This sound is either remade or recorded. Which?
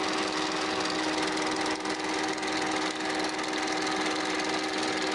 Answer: recorded